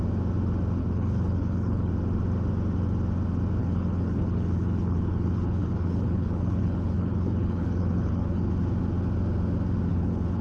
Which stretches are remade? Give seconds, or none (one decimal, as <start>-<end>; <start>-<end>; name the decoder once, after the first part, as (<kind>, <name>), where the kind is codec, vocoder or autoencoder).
0.8-1.9 (codec, HILCodec); 3.6-8.5; 9.9-10.4